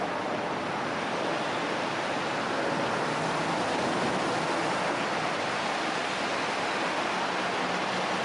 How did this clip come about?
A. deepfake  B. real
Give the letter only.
B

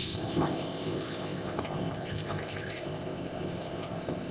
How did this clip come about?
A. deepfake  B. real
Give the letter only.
A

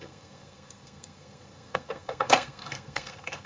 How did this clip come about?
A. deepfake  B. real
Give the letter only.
A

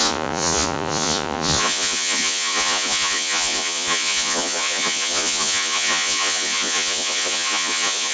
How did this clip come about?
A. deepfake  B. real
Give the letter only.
A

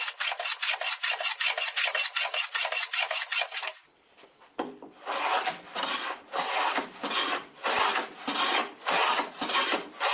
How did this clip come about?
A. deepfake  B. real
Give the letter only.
A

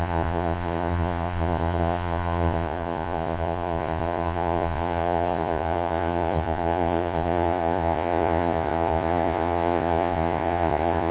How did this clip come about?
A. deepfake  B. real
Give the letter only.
A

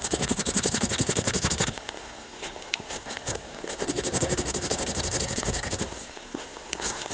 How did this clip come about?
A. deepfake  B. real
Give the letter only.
A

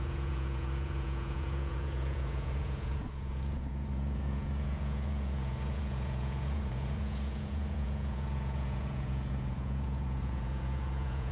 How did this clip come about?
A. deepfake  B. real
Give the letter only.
A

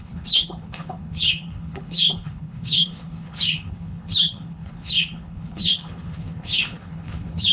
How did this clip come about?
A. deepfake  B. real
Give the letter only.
A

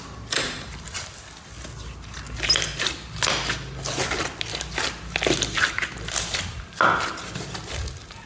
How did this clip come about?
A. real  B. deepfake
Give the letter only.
A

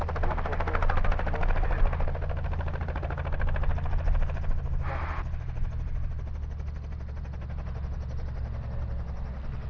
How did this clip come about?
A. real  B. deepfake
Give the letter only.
A